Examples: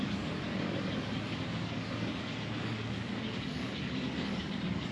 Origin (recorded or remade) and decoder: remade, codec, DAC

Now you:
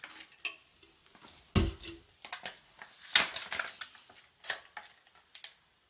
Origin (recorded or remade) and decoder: recorded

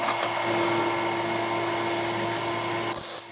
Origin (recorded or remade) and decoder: recorded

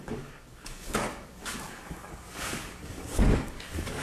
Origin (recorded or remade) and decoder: remade, codec, DAC